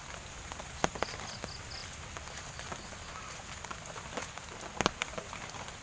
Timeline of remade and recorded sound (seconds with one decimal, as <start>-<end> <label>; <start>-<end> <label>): 0.0-5.8 recorded